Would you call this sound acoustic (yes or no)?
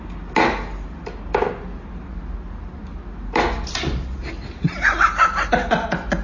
yes